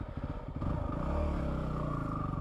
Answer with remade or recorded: recorded